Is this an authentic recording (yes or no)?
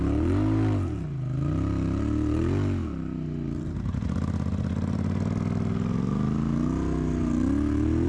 yes